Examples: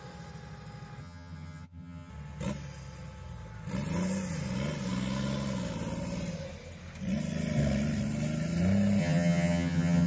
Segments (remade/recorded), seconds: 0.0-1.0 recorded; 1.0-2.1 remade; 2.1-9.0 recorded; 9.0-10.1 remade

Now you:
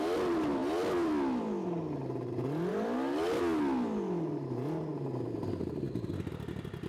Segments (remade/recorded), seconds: 0.0-6.9 recorded